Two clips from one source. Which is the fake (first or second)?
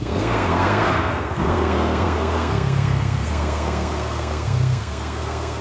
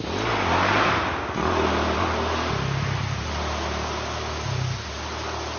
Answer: first